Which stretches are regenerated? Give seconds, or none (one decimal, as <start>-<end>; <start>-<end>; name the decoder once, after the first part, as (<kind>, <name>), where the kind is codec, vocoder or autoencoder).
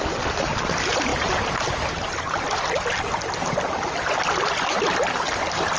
none